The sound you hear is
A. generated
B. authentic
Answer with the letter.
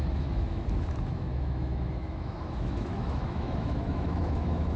A